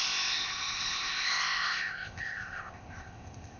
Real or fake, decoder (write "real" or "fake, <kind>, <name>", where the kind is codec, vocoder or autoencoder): fake, codec, ZipCodec